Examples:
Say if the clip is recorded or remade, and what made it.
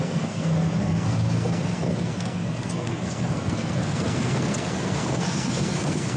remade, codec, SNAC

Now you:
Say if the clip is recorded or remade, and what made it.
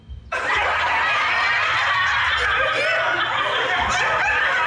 recorded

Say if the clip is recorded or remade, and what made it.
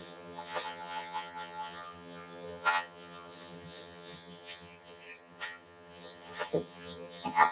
remade, vocoder, HiFi-GAN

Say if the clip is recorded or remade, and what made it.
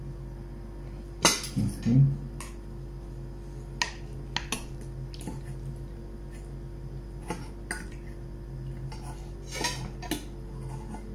recorded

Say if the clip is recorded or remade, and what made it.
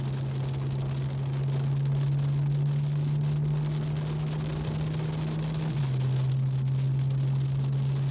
recorded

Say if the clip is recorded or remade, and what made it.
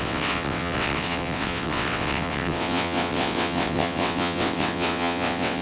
remade, vocoder, WaveNeXt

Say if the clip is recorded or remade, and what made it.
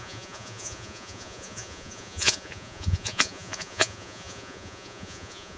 remade, vocoder, Vocos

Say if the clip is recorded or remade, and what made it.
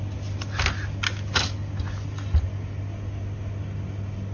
recorded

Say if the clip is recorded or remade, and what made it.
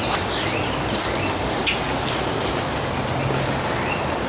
recorded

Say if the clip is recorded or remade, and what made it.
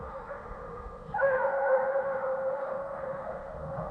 remade, autoencoder, DAC-VAE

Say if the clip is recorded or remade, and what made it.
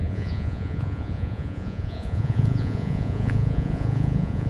remade, vocoder, Vocos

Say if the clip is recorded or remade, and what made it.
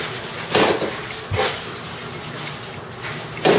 recorded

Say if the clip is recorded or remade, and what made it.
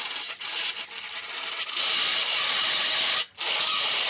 recorded